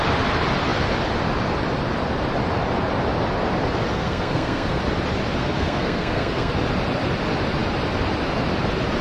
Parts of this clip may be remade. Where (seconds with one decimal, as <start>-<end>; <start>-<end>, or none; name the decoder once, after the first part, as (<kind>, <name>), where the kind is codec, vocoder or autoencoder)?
3.9-4.8 (codec, SNAC); 5.4-6.5